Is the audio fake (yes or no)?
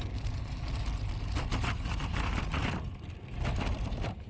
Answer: no